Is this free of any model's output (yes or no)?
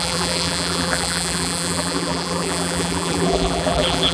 no